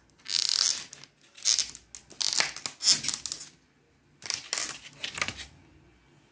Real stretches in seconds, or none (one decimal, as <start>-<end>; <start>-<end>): 0.0-6.3